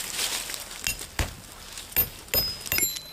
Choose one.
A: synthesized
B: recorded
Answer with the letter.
B